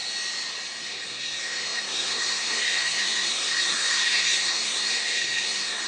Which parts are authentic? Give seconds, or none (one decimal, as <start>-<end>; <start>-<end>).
0.0-0.8